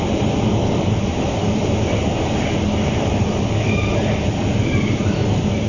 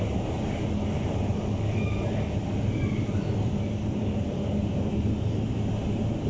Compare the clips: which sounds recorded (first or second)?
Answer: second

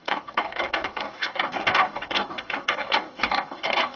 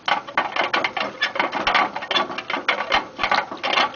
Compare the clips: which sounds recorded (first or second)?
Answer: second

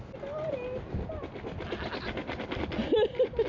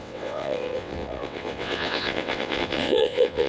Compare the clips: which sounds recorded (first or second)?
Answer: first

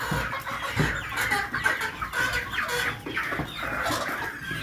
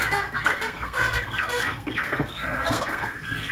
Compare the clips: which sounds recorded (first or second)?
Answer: first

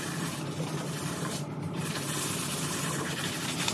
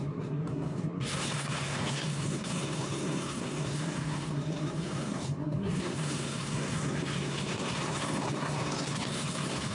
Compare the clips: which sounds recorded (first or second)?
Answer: first